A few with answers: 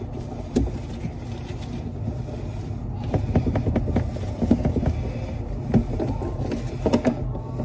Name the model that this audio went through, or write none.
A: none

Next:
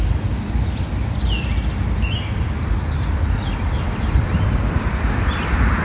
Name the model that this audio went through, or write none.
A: none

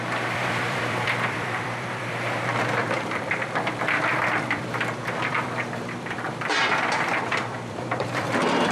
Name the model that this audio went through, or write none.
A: vocoder, BigVGAN v2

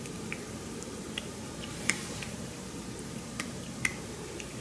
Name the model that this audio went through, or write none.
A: vocoder, BigVGAN v2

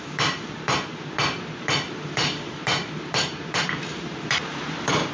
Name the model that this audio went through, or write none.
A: vocoder, BigVGAN v2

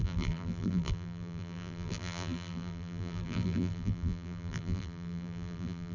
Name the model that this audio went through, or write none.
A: vocoder, BigVGAN v2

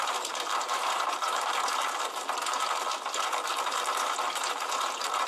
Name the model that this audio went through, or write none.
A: vocoder, BigVGAN v2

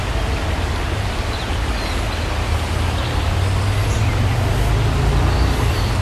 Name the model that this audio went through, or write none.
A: none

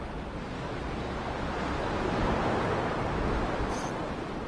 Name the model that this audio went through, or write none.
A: none